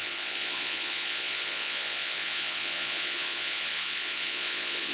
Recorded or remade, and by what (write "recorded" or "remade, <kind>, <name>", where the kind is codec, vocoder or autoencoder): remade, vocoder, Vocos